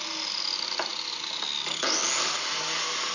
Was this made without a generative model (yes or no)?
yes